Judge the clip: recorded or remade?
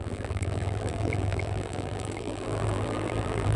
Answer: remade